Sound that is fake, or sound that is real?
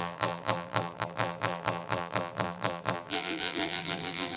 fake